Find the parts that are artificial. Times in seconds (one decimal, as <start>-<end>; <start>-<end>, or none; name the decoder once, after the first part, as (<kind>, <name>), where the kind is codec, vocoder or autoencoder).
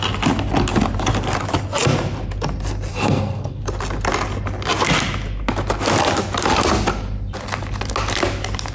2.9-3.6 (codec, SNAC)